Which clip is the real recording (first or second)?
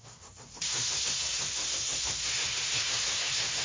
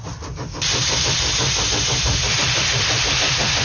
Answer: second